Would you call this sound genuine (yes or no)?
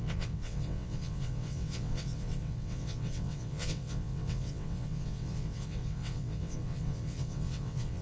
no